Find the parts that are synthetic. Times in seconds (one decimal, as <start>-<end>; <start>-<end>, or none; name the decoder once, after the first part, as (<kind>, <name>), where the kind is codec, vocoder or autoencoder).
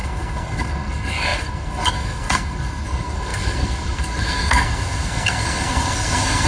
0.0-6.5 (codec, SNAC)